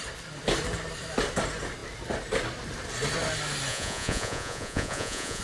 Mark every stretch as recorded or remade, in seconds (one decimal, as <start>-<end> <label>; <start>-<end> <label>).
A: 0.0-3.7 recorded; 3.7-5.4 remade